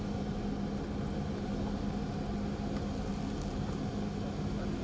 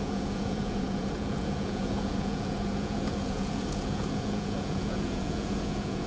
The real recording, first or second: first